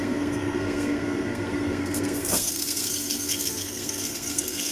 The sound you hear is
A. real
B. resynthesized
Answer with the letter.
B